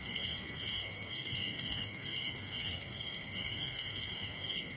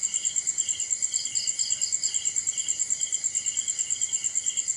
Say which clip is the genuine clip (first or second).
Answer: second